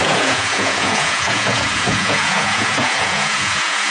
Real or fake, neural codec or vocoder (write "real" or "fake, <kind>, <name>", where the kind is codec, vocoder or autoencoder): fake, vocoder, Vocos